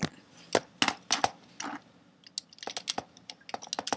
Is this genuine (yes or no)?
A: yes